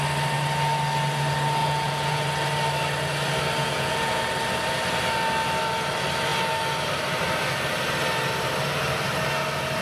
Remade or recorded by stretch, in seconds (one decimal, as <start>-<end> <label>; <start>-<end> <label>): 0.0-1.6 recorded; 1.6-2.2 remade; 2.2-3.6 recorded; 3.6-4.2 remade; 4.2-9.8 recorded